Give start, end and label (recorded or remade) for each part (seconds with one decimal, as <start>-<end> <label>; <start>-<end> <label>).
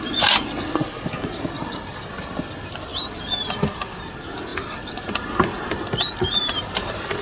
0.0-7.2 recorded